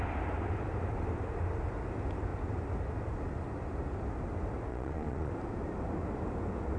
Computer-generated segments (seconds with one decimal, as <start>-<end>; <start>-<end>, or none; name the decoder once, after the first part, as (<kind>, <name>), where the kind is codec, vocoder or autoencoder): 4.7-5.3 (vocoder, Vocos)